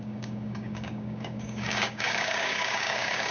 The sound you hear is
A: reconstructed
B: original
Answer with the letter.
A